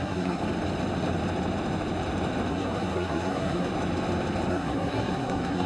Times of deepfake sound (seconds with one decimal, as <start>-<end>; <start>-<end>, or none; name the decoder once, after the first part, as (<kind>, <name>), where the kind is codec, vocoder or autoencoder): 0.0-0.4 (codec, SNAC); 2.5-3.7; 4.5-5.7